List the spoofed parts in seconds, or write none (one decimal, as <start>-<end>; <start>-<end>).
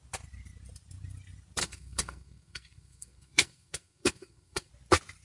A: 1.6-4.7